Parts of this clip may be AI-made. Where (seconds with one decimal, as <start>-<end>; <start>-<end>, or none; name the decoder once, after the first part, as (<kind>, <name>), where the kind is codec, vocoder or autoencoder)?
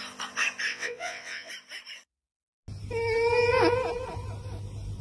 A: 0.7-1.5 (vocoder, WaveNeXt)